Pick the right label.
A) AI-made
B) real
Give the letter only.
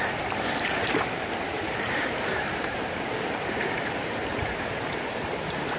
A